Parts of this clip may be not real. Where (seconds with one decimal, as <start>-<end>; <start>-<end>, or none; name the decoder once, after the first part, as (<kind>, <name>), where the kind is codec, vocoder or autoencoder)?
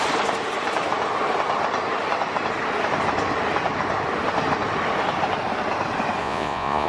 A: 6.2-6.9 (vocoder, Vocos)